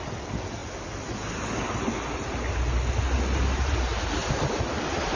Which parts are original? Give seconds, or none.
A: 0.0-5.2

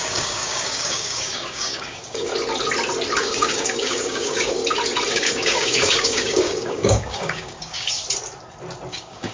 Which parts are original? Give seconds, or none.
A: 2.3-3.2; 4.6-5.1; 8.0-8.9

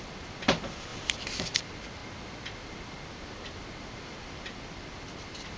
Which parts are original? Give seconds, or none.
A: 0.0-5.6

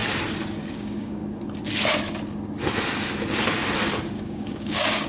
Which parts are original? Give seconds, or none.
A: 0.0-0.7; 1.2-4.1